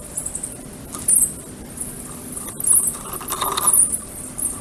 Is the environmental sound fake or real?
real